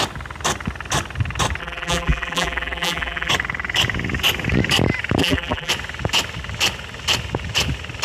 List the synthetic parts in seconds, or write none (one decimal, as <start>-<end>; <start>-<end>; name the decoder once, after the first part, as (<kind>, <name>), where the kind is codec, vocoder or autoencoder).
1.6-3.3 (vocoder, BigVGAN v2); 5.2-5.7